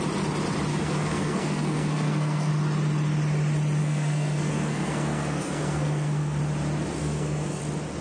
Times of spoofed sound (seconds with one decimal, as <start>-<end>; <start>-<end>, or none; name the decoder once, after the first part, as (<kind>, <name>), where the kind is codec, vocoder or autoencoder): 0.7-2.5 (codec, SNAC); 3.8-6.4; 7.0-7.6